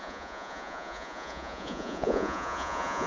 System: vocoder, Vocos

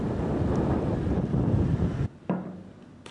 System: none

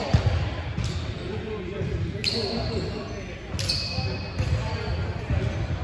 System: none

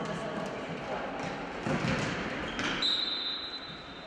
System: none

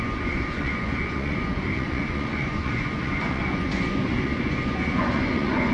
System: vocoder, Vocos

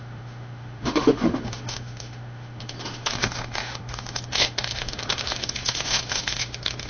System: autoencoder, DAC-VAE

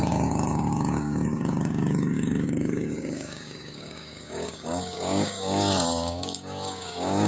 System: codec, DAC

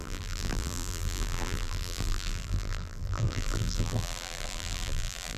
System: vocoder, BigVGAN v2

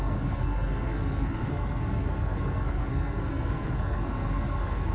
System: codec, SNAC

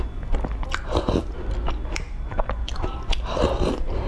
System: none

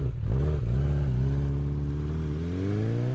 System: none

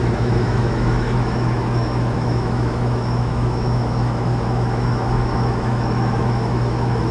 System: autoencoder, DAC-VAE